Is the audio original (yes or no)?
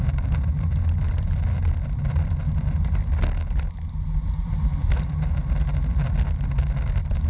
yes